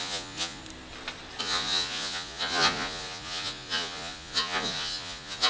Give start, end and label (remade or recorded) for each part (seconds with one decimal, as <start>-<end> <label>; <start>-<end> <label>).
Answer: 0.0-0.6 remade; 0.6-1.4 recorded; 1.4-5.5 remade